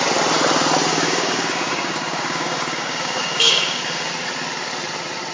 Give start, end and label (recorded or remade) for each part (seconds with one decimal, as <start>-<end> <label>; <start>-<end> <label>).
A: 0.0-0.9 recorded; 0.9-4.1 remade; 4.1-5.3 recorded